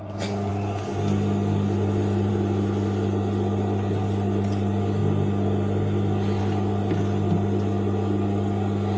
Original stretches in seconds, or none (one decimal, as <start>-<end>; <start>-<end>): 0.0-9.0